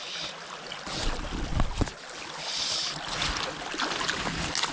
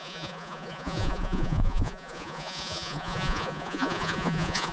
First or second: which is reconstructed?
second